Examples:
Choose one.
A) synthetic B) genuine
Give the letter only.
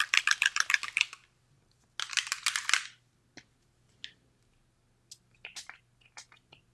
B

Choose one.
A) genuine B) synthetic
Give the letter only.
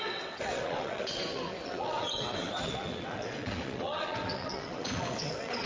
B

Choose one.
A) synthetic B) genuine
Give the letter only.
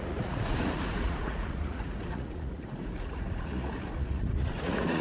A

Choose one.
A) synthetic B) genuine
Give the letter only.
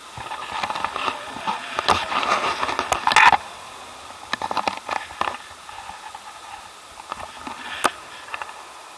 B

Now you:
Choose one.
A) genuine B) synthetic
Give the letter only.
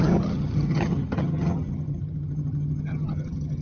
B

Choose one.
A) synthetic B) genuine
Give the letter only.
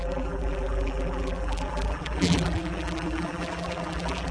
A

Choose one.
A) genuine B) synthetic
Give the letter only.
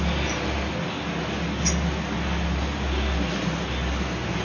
A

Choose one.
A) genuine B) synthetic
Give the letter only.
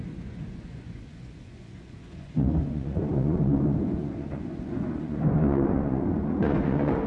B